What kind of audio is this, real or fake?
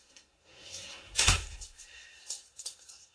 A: fake